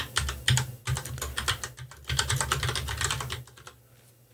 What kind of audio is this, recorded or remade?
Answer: recorded